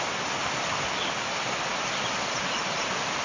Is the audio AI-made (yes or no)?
no